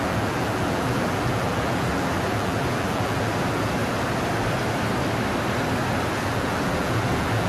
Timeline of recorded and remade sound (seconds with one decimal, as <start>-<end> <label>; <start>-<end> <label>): 0.0-3.8 remade; 3.8-6.1 recorded; 6.1-7.5 remade